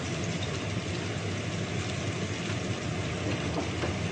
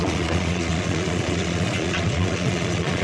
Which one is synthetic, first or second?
second